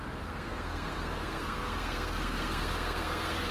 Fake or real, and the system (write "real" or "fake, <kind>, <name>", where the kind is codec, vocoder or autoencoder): fake, codec, SNAC